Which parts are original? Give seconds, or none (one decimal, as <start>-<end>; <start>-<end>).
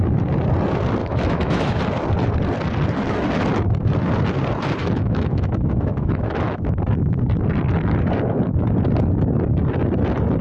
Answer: 0.0-1.0; 1.8-4.8; 6.8-10.4